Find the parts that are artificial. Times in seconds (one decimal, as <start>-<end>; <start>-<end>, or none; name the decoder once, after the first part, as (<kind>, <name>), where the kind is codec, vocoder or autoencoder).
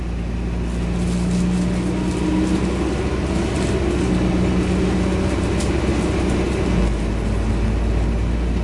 none